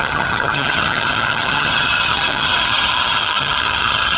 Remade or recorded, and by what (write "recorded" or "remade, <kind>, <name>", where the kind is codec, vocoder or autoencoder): remade, vocoder, HiFi-GAN